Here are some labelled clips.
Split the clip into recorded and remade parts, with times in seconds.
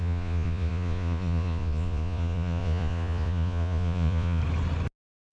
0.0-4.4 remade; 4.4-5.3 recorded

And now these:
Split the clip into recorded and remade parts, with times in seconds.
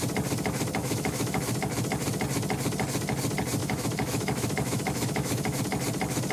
0.0-0.8 recorded; 0.8-1.4 remade; 1.4-3.6 recorded; 3.6-5.6 remade; 5.6-6.3 recorded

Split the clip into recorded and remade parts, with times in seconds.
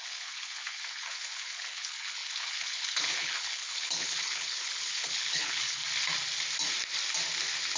0.0-5.8 remade; 5.8-7.8 recorded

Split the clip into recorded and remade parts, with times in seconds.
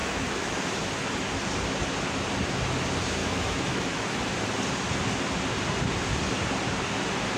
0.0-0.6 remade; 0.6-3.2 recorded; 3.2-4.2 remade; 4.2-7.4 recorded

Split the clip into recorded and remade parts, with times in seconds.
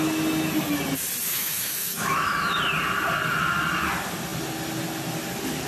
0.0-1.3 recorded; 1.3-2.6 remade; 2.6-5.7 recorded